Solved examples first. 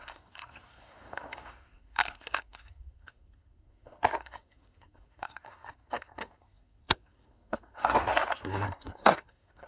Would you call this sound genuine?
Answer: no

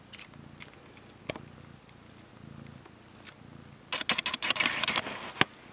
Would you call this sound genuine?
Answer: yes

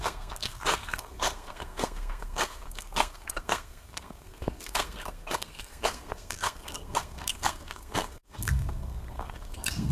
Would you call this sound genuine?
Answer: no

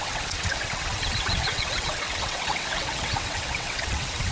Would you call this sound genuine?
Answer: no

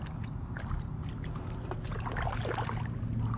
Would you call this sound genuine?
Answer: yes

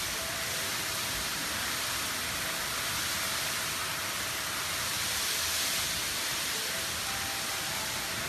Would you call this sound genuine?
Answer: yes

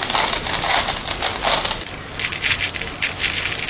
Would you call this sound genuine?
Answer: yes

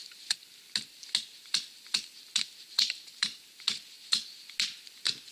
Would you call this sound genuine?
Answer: yes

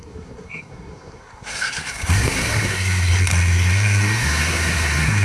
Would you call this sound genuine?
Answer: no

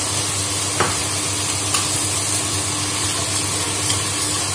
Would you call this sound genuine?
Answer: yes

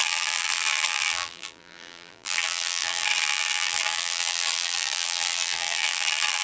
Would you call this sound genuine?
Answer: no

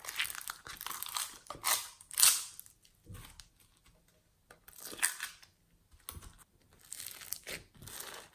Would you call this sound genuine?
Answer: yes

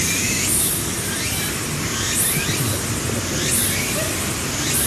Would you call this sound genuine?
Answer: yes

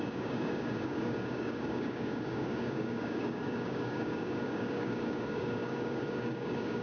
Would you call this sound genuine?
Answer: no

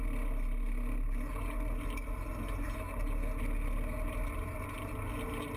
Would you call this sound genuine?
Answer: yes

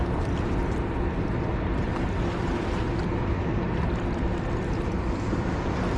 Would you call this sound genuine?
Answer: yes